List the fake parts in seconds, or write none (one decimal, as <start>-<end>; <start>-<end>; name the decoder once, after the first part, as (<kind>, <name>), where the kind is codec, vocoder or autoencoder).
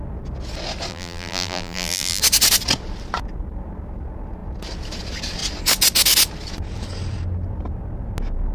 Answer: 0.9-2.2 (vocoder, BigVGAN v2)